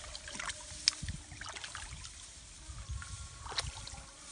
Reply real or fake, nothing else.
real